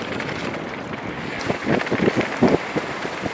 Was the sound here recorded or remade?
remade